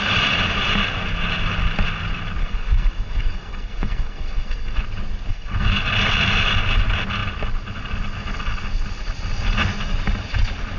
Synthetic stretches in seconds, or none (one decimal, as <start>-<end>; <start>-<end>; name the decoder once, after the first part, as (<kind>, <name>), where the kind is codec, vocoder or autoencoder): 2.4-4.8 (codec, SNAC); 5.3-5.8